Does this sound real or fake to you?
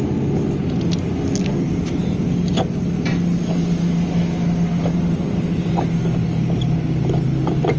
real